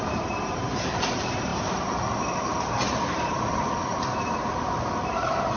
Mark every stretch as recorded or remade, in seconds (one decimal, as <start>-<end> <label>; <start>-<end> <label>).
0.0-5.6 remade